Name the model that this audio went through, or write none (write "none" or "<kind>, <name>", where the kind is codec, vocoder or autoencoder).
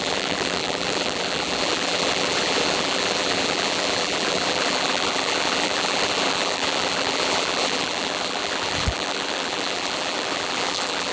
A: vocoder, BigVGAN v2